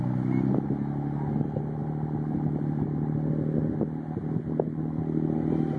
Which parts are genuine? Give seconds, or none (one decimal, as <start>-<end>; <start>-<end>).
0.0-5.8